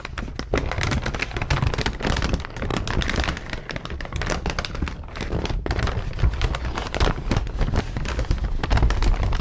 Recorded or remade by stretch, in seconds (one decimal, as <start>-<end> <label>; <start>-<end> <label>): 0.0-9.4 recorded